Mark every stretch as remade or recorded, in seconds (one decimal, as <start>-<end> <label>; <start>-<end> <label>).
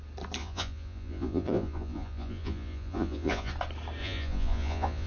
0.0-0.4 recorded; 0.4-3.5 remade; 3.5-4.0 recorded; 4.0-5.1 remade